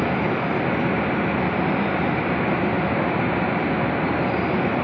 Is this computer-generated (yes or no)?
no